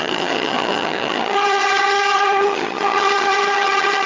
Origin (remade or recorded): remade